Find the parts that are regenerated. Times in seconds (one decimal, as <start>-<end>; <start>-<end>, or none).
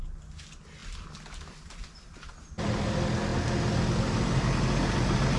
none